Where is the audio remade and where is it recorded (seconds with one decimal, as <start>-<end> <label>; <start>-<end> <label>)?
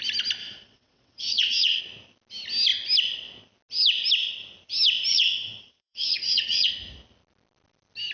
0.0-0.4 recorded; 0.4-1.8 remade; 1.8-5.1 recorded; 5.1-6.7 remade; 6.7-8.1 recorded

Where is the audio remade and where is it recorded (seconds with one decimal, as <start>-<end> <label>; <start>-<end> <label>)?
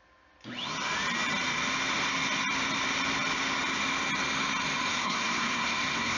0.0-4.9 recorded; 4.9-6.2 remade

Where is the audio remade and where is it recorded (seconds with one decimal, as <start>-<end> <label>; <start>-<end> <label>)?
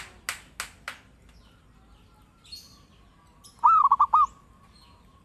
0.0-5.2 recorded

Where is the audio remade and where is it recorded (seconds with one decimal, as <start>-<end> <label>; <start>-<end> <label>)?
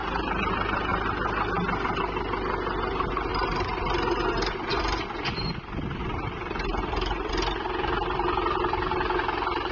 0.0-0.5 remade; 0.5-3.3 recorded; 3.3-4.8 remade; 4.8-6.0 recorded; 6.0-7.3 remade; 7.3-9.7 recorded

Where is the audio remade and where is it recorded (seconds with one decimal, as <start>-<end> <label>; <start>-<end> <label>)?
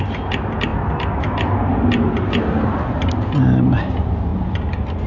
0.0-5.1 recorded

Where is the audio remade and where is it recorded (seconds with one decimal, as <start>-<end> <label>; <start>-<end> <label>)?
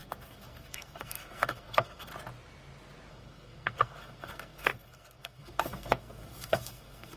0.0-2.1 remade; 2.1-3.1 recorded; 3.1-7.2 remade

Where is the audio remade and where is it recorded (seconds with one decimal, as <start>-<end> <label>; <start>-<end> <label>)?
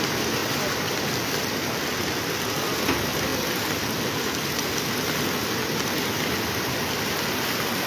0.0-0.4 recorded; 0.4-1.7 remade; 1.7-3.3 recorded; 3.3-4.5 remade; 4.5-7.9 recorded